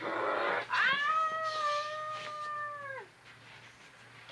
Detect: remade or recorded recorded